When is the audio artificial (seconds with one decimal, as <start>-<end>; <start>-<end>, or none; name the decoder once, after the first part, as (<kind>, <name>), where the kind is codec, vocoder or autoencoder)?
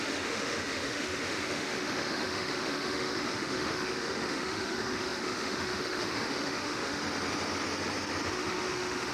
0.0-7.0 (autoencoder, DAC-VAE); 8.3-9.1